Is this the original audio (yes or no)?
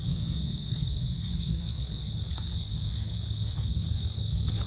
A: no